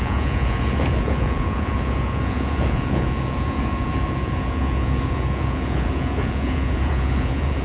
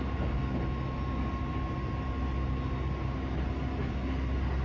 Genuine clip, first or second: second